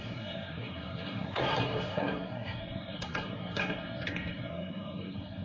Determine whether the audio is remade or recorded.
remade